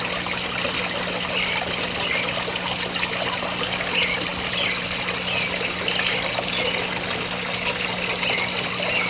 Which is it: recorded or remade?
recorded